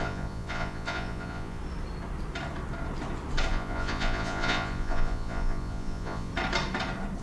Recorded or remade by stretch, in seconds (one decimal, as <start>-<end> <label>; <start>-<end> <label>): 0.0-1.6 remade; 1.6-3.5 recorded; 3.5-6.3 remade; 6.3-7.2 recorded